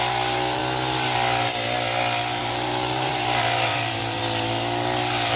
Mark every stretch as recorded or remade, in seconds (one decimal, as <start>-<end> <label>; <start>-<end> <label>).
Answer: 0.0-0.6 remade; 0.6-2.4 recorded; 2.4-4.2 remade; 4.2-5.4 recorded